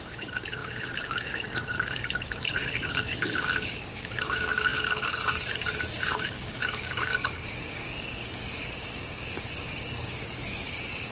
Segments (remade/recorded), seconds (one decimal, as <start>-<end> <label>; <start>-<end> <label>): 0.0-11.1 remade